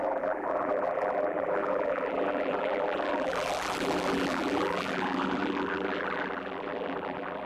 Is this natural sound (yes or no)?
no